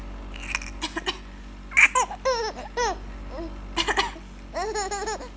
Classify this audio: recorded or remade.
recorded